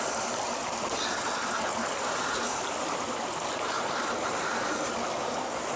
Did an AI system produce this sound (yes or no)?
no